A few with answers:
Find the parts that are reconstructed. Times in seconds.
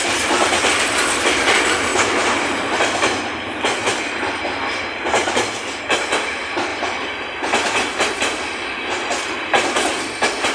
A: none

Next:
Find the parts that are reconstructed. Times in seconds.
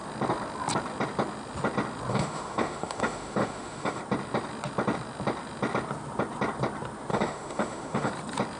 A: 2.1-4.0 (autoencoder, DAC-VAE); 7.1-8.1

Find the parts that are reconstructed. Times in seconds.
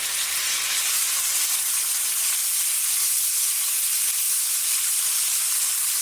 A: none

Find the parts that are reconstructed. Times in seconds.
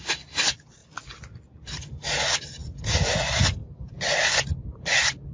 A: none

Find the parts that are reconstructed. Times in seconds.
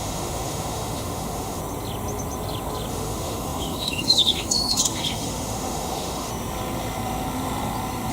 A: 0.0-1.6 (autoencoder, DAC-VAE); 2.9-6.3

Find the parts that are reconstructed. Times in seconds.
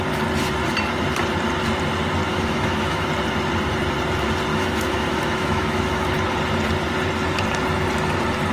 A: 2.3-3.1 (autoencoder, DAC-VAE); 4.5-6.1